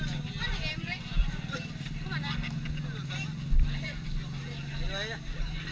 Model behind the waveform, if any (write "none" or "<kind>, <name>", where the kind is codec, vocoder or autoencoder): none